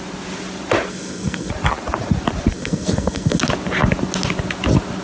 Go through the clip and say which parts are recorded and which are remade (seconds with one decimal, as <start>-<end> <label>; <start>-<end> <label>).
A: 0.0-0.9 recorded; 0.9-1.5 remade; 1.5-2.5 recorded; 2.5-3.4 remade; 3.4-5.0 recorded